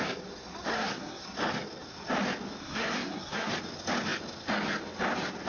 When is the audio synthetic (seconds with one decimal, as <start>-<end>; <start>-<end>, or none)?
0.7-1.2; 2.6-3.5